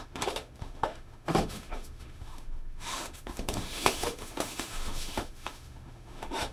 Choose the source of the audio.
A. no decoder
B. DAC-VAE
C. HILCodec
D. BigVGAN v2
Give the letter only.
B